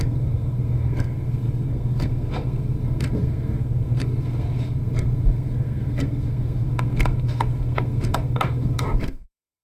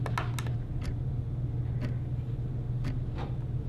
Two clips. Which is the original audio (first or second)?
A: second